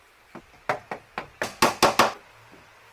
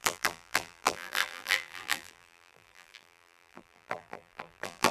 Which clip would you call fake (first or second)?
second